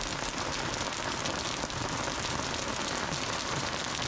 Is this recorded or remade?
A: recorded